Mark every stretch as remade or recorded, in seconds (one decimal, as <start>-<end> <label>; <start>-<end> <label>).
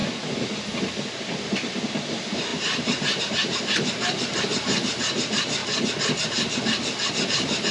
0.0-1.0 recorded; 1.0-5.6 remade; 5.6-7.1 recorded; 7.1-7.7 remade